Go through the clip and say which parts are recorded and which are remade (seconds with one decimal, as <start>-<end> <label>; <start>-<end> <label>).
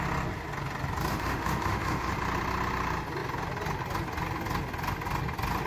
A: 0.0-1.1 recorded; 1.1-2.1 remade; 2.1-5.7 recorded